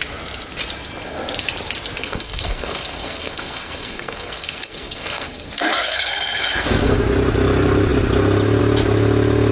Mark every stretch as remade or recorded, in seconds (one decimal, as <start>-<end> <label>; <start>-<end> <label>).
0.0-2.0 recorded; 2.0-7.0 remade; 7.0-9.5 recorded